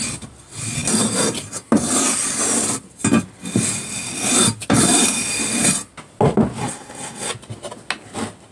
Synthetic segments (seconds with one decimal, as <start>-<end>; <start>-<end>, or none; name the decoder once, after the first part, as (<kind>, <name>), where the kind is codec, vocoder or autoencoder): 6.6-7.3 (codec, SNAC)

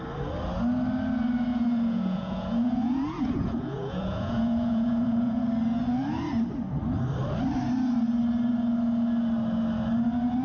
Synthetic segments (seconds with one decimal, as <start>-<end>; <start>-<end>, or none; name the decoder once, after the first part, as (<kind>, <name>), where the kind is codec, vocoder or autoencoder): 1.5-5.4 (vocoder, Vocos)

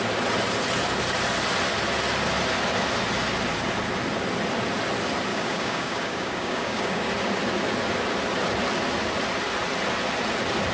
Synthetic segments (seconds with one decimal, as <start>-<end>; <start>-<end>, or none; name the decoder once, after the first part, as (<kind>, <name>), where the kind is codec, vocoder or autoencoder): 5.3-7.1 (codec, DAC)

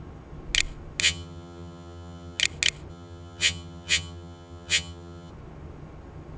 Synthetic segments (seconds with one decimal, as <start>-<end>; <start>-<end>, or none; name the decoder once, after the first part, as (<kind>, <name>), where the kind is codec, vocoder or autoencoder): 1.0-2.4 (vocoder, HiFi-GAN); 2.9-5.3

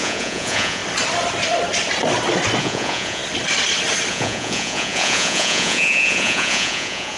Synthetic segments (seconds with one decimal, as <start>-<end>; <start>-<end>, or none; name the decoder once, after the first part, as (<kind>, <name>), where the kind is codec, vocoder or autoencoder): 0.0-0.8 (vocoder, Vocos); 2.6-3.2; 4.1-7.2

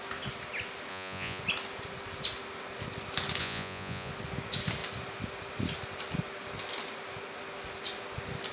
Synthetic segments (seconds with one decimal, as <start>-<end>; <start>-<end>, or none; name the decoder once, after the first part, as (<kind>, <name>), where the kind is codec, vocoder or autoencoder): 0.9-1.4 (vocoder, Vocos); 3.4-4.1

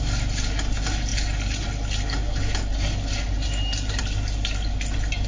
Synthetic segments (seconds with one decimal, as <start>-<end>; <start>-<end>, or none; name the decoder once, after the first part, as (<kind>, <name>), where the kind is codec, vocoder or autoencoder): none

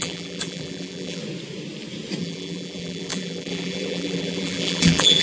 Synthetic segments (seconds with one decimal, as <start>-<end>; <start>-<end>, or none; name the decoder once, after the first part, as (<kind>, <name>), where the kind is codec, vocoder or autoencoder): 0.0-1.2 (vocoder, BigVGAN v2); 2.2-5.2